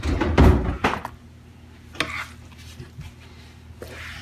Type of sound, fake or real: real